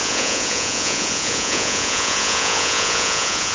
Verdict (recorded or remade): remade